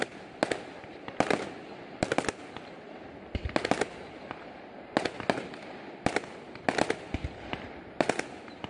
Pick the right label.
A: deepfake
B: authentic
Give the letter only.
B